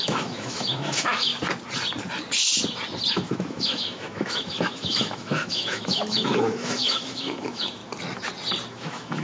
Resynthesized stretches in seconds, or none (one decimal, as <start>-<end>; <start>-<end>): 0.0-1.3; 3.1-7.8; 8.7-9.2